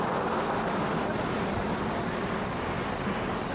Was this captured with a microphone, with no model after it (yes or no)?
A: yes